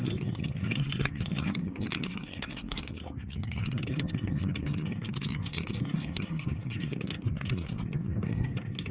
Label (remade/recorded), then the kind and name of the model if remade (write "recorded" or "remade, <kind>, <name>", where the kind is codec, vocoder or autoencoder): remade, codec, SNAC